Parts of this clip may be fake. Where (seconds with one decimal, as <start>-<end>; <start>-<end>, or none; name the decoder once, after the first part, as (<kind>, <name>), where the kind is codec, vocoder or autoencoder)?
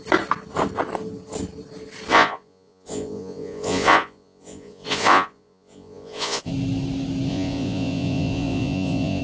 2.1-6.5 (vocoder, Vocos); 7.3-9.2